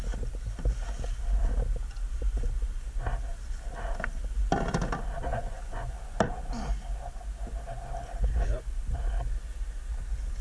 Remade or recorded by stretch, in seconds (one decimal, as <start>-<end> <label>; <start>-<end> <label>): 0.0-5.3 recorded; 5.3-6.2 remade; 6.2-10.4 recorded